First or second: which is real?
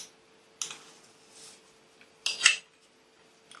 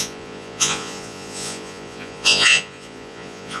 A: first